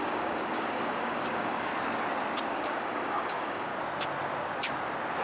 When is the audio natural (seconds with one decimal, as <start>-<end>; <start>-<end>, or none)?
1.7-2.5; 3.7-5.2

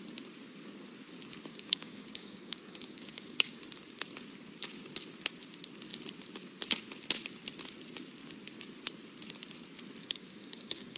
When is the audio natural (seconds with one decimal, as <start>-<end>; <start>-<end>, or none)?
0.0-1.5; 3.6-10.0